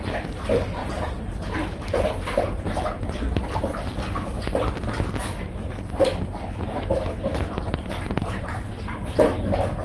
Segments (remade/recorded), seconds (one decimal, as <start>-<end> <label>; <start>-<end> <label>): 0.0-0.8 recorded; 0.8-3.0 remade; 3.0-7.3 recorded; 7.3-8.7 remade; 8.7-9.8 recorded